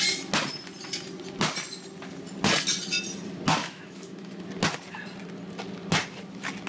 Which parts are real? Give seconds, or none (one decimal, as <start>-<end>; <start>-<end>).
0.0-3.6; 4.4-6.7